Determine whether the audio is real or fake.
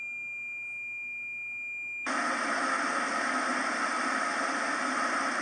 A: real